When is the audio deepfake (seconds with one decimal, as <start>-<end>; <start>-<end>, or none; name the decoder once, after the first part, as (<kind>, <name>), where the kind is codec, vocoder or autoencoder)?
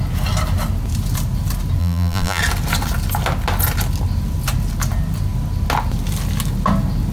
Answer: 1.8-2.4 (vocoder, BigVGAN v2)